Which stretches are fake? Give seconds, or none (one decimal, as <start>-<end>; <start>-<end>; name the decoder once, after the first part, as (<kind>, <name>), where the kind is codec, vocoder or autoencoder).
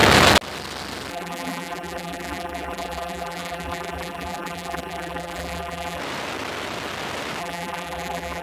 1.1-6.0 (vocoder, BigVGAN v2); 7.4-8.4